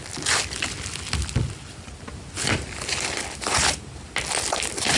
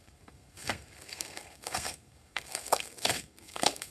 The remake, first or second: second